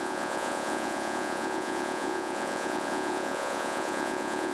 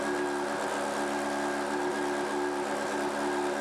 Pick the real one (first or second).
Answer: second